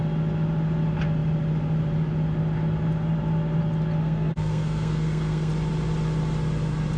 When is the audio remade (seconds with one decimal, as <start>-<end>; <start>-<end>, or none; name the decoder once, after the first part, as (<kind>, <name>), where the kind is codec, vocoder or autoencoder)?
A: 4.0-5.5 (codec, SNAC)